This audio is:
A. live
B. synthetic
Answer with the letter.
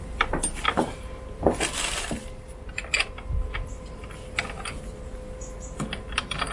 A